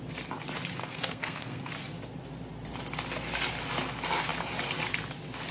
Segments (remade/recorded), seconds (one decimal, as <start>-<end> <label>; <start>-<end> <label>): 0.0-0.8 recorded; 0.8-1.7 remade; 1.7-5.5 recorded